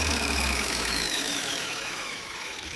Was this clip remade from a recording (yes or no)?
yes